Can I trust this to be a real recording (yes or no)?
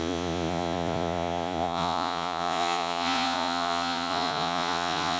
no